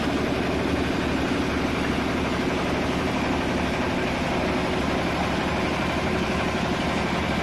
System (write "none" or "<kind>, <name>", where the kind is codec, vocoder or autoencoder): none